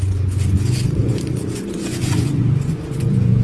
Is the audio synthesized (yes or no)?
yes